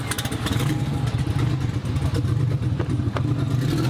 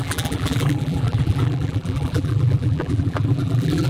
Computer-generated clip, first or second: second